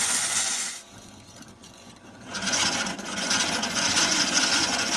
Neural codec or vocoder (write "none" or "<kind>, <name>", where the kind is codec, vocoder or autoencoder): vocoder, Vocos